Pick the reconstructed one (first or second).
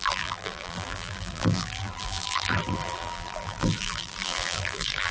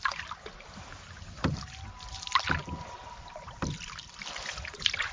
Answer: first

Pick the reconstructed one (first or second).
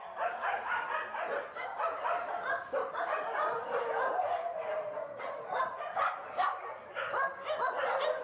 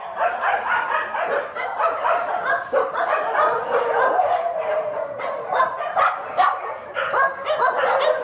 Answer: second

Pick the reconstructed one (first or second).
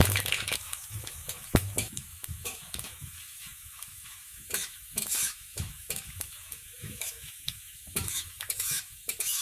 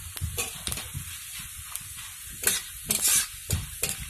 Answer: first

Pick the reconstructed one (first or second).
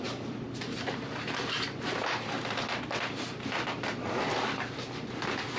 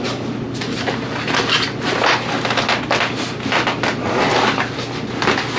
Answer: first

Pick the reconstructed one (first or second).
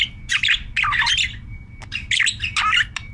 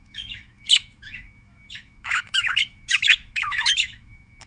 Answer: second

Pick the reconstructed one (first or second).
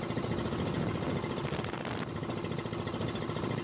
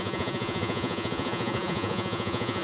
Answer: second